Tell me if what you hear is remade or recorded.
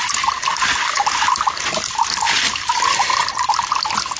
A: recorded